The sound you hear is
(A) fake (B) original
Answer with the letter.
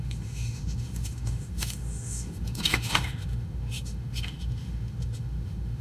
A